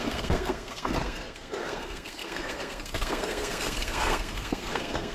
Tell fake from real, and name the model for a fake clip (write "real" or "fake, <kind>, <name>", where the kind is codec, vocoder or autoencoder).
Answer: fake, codec, SNAC